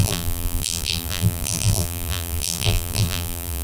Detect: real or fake fake